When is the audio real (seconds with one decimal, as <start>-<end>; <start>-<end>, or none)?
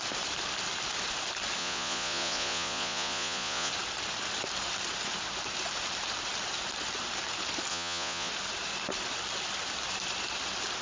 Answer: 0.0-1.6; 3.7-7.7; 8.3-10.8